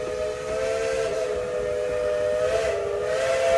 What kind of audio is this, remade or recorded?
recorded